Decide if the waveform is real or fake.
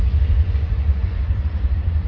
fake